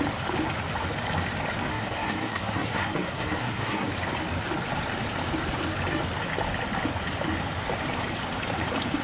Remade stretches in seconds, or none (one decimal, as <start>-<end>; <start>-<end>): 1.7-3.9